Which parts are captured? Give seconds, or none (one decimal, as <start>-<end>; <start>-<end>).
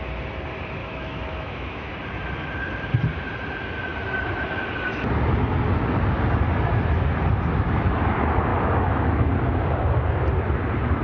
0.0-0.8; 1.9-8.5; 9.3-11.0